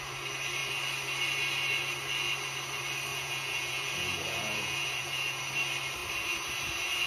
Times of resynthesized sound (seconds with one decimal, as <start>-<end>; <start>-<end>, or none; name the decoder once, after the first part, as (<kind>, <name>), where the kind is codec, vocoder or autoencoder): 3.1-5.4 (vocoder, Vocos)

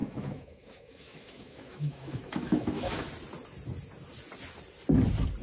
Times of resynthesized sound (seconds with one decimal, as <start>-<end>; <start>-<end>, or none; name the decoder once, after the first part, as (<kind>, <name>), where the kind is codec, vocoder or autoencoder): 0.0-3.1 (autoencoder, DAC-VAE)

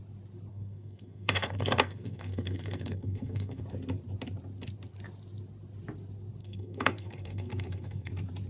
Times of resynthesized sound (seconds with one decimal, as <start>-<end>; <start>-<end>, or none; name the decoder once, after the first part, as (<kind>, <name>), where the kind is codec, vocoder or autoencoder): 0.5-3.6 (codec, SNAC); 6.4-8.1

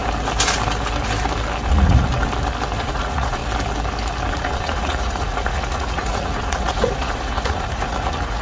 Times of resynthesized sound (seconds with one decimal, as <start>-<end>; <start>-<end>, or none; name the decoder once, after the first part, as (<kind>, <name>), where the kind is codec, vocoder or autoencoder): 1.7-2.1 (vocoder, Vocos); 2.8-3.4; 4.3-8.4

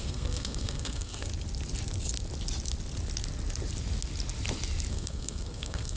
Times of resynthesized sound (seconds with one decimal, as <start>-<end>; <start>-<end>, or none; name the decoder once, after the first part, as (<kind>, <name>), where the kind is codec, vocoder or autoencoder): 0.0-1.3 (codec, SNAC); 4.9-6.0

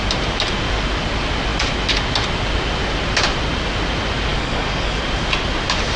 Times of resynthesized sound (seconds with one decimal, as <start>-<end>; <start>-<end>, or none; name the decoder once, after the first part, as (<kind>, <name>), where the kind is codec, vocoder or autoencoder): 4.3-5.0 (codec, DAC)